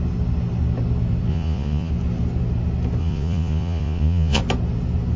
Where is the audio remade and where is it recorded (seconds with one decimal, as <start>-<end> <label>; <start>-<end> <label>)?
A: 0.0-1.3 recorded; 1.3-1.9 remade; 1.9-3.0 recorded; 3.0-4.4 remade; 4.4-5.2 recorded